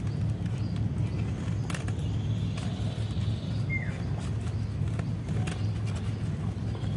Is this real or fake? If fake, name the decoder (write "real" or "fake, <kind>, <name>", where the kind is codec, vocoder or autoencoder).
real